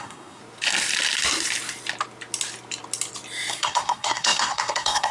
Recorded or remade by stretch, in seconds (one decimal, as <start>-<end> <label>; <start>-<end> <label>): 0.0-0.4 remade; 0.4-3.5 recorded; 3.5-5.1 remade